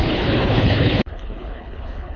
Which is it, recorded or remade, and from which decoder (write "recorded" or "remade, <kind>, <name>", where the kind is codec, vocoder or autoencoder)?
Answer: remade, codec, HILCodec